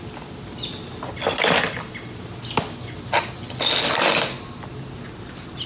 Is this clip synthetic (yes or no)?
no